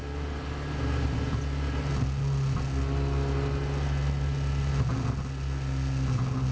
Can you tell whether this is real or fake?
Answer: real